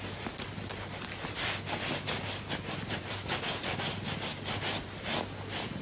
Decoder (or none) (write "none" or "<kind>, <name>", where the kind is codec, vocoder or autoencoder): none